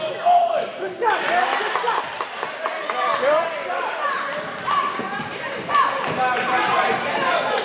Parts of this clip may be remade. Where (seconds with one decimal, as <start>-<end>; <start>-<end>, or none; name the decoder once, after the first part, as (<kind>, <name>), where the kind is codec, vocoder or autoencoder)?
none